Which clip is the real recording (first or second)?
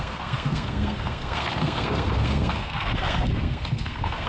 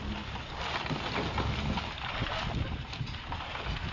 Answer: second